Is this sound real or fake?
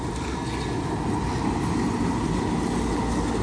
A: real